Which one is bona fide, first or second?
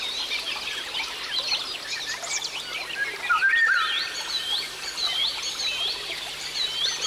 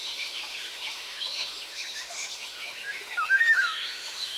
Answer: first